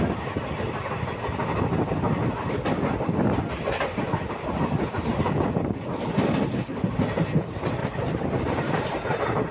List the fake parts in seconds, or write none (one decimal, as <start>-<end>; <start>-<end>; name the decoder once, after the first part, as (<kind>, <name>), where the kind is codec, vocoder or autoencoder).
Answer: 7.8-8.8 (vocoder, BigVGAN v2)